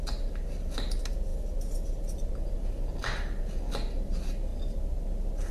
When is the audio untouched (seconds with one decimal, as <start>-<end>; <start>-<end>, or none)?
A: 0.0-5.5